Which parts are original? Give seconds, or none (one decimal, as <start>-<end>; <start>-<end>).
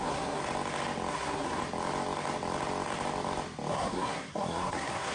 0.4-1.1; 1.6-3.7